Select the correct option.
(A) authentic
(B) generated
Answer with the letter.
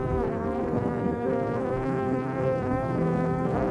B